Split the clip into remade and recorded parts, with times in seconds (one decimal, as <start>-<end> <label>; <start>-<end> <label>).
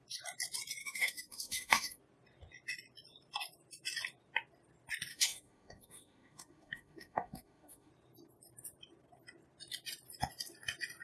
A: 0.0-0.8 recorded; 0.8-2.0 remade; 2.0-5.1 recorded; 5.1-7.9 remade; 7.9-11.0 recorded